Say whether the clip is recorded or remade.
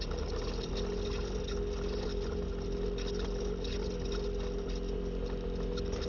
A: recorded